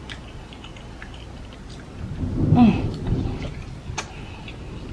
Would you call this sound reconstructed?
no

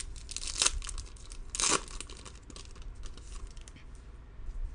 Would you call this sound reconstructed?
no